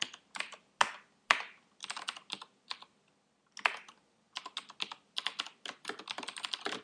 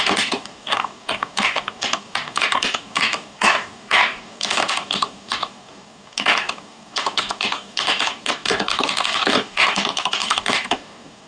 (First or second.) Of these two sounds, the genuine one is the first